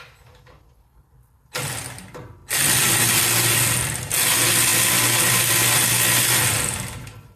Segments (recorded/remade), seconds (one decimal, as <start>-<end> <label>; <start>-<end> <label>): 0.0-7.4 recorded